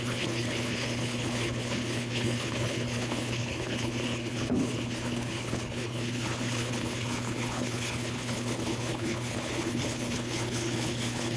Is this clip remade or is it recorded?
remade